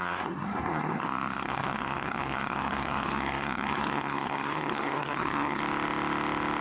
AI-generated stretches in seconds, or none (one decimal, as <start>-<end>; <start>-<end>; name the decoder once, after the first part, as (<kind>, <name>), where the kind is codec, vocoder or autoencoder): 0.0-5.6 (codec, SNAC)